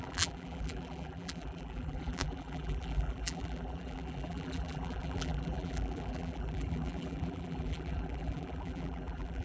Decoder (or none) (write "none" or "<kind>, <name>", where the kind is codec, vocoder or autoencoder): vocoder, BigVGAN v2